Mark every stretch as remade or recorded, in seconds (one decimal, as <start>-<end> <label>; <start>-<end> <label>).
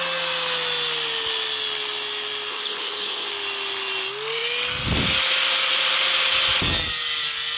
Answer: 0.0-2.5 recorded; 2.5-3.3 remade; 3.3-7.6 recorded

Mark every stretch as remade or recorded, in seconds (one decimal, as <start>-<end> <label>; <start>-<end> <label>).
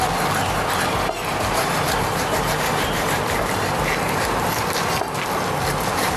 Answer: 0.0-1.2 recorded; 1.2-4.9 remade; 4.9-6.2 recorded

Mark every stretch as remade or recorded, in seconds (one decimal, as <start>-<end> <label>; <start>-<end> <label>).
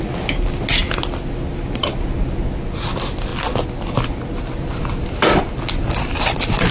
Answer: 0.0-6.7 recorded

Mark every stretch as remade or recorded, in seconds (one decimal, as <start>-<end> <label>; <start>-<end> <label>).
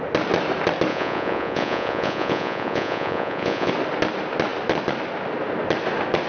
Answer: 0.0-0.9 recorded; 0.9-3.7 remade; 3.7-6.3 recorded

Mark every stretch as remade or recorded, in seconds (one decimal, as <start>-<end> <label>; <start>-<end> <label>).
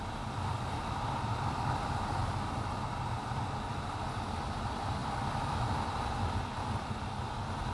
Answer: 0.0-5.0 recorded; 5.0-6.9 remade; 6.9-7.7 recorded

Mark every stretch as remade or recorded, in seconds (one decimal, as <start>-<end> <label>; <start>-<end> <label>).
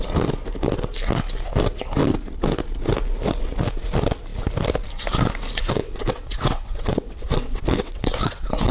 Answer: 0.0-5.8 recorded; 5.8-8.7 remade